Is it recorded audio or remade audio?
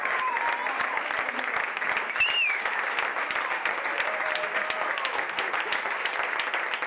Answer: recorded